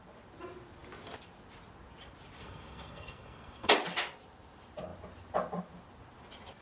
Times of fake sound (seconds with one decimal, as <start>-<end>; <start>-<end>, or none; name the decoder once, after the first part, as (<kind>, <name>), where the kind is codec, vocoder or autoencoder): 2.4-3.7 (codec, SNAC)